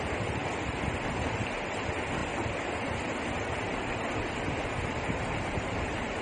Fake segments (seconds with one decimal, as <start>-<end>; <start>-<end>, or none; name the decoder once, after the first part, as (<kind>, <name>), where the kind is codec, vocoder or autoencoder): 0.0-0.4 (vocoder, BigVGAN v2); 1.1-2.2; 4.7-6.2